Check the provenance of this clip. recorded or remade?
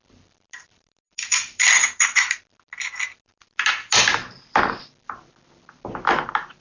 recorded